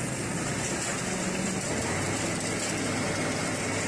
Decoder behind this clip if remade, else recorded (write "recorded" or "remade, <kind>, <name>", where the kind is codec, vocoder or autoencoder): recorded